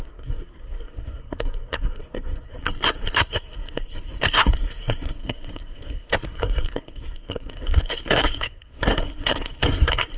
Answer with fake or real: fake